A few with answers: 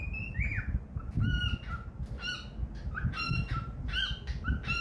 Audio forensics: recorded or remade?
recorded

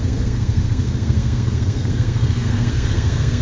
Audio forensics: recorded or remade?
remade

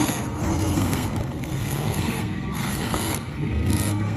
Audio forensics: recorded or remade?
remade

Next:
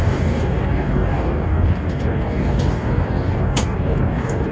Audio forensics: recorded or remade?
remade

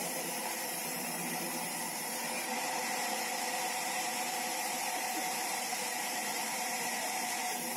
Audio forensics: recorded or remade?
remade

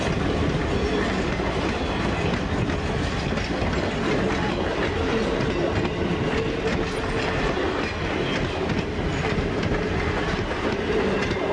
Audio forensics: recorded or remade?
recorded